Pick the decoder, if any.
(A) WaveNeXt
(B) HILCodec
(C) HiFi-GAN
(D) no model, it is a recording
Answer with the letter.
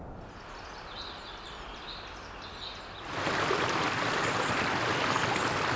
D